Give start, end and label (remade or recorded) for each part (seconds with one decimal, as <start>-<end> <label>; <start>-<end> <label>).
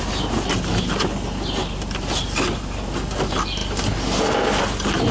0.0-5.1 recorded